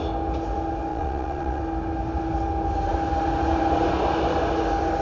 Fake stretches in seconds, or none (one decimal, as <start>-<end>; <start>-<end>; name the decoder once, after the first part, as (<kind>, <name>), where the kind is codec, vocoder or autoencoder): 0.9-1.6 (vocoder, Vocos)